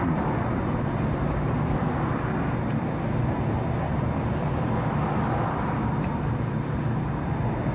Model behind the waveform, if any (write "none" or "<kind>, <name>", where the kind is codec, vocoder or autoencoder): none